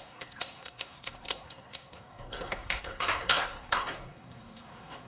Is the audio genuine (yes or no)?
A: no